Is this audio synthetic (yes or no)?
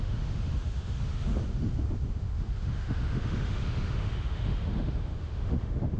yes